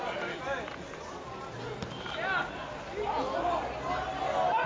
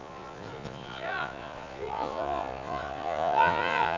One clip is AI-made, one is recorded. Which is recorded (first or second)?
first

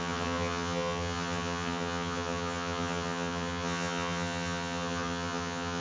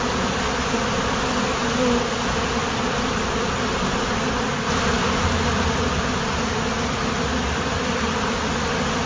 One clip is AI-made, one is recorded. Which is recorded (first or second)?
second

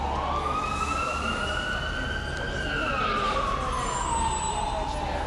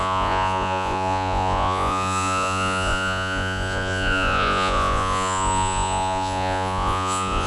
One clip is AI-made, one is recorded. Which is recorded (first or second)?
first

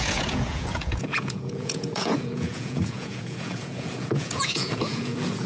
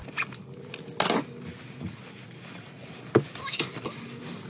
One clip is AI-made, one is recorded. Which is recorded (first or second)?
second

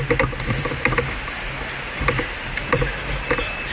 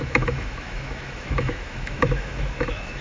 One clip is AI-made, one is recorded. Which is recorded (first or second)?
first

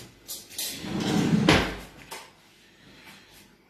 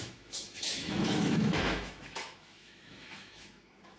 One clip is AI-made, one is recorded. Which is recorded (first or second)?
first